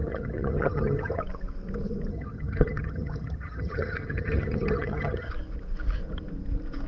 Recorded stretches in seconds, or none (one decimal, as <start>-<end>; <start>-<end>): 1.2-2.1; 5.3-6.9